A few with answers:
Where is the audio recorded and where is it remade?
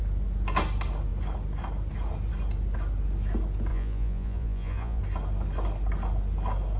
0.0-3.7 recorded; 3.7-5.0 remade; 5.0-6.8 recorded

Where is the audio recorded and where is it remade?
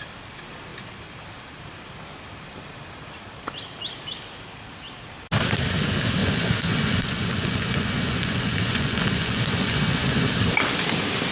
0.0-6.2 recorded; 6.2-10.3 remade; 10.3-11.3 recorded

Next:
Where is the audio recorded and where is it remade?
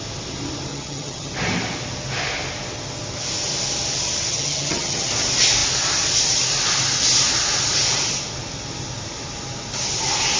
0.0-0.7 recorded; 0.7-1.3 remade; 1.3-4.3 recorded; 4.3-5.1 remade; 5.1-10.4 recorded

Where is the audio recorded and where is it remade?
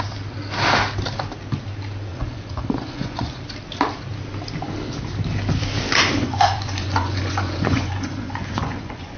0.0-2.1 recorded; 2.1-3.4 remade; 3.4-6.2 recorded; 6.2-9.2 remade